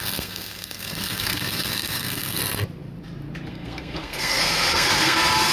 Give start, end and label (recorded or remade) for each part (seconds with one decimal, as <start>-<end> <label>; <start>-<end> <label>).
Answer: 0.0-2.4 remade; 2.4-3.5 recorded; 3.5-5.5 remade

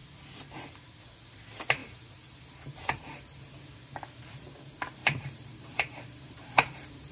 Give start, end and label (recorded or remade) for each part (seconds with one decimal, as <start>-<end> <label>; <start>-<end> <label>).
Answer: 0.0-1.8 recorded; 1.8-4.2 remade; 4.2-5.0 recorded; 5.0-7.1 remade

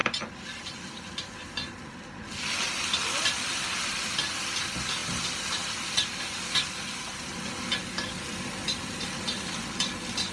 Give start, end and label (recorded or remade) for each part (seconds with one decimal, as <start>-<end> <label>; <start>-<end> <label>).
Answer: 0.0-10.3 recorded